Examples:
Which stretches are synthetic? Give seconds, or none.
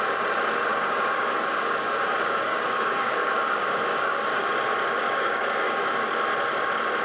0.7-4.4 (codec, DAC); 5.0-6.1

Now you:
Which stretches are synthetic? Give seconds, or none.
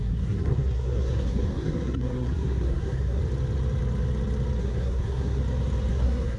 0.0-3.2 (codec, SNAC); 4.6-5.4; 5.9-6.4